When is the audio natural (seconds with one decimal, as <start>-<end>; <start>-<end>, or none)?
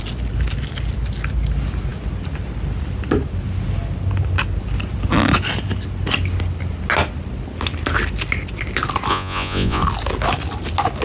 0.0-9.1; 9.8-11.0